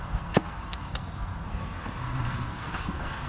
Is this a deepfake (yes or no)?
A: yes